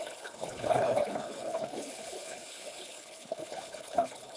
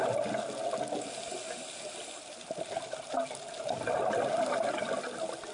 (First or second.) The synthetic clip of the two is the first